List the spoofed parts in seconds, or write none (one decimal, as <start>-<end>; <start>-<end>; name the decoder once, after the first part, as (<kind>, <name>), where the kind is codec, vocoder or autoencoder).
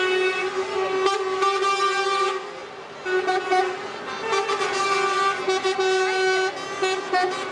none